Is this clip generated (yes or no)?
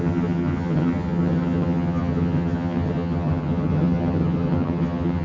yes